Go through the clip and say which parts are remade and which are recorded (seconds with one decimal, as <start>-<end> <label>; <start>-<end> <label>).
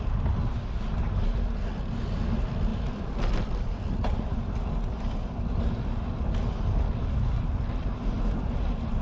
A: 0.0-9.0 recorded